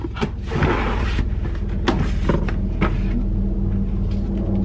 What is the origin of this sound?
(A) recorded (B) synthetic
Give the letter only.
A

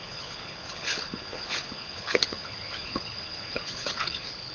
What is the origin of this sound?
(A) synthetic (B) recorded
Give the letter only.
A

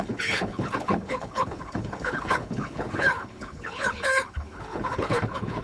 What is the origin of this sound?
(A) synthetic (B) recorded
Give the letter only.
A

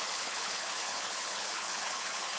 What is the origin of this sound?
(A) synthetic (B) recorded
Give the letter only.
A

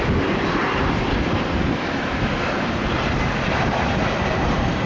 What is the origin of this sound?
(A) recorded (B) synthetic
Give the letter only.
A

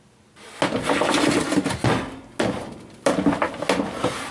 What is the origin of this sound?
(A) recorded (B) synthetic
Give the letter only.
A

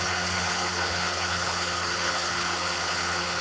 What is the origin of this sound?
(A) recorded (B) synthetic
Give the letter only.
B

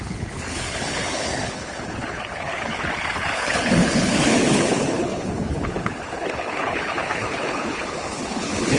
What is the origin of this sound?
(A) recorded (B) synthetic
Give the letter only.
B